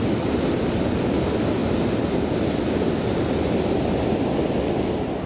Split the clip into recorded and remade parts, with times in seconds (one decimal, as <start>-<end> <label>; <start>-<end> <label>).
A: 0.0-5.3 recorded